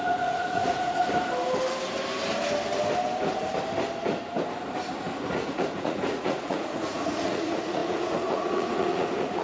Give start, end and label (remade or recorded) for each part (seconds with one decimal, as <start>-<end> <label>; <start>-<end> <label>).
0.0-1.0 remade; 1.0-5.3 recorded; 5.3-9.4 remade